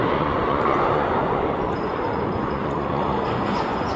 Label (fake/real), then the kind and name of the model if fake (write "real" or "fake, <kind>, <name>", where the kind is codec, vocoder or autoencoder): fake, vocoder, Vocos